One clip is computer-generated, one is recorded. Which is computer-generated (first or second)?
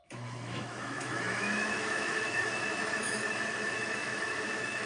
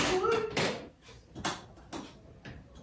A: first